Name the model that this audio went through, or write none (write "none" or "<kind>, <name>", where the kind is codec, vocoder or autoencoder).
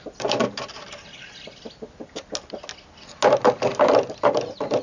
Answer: none